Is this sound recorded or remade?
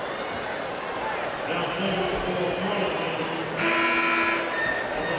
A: recorded